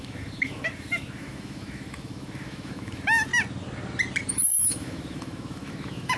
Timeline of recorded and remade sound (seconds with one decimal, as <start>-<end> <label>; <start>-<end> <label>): 0.0-3.3 remade; 3.3-4.3 recorded; 4.3-6.2 remade